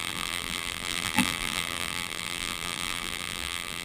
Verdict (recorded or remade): remade